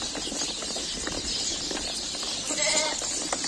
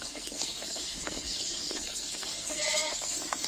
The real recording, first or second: first